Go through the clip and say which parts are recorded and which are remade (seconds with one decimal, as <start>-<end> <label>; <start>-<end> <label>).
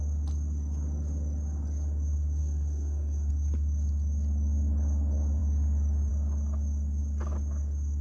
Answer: 0.0-2.4 recorded; 2.4-3.3 remade; 3.3-8.0 recorded